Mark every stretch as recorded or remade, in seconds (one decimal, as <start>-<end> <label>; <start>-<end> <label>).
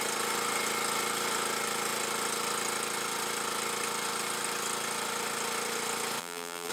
0.0-6.2 recorded; 6.2-6.7 remade